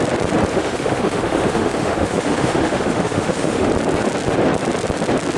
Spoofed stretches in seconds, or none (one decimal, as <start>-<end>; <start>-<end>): 0.5-3.7